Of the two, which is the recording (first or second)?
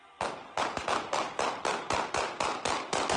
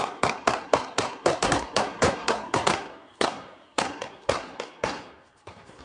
first